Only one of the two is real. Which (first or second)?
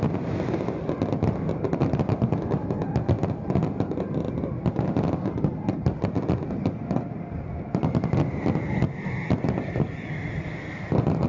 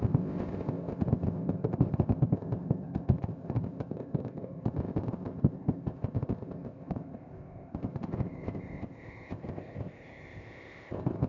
first